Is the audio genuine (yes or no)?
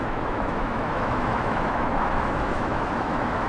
no